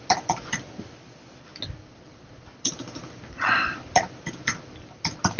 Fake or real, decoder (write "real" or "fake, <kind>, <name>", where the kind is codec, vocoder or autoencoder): real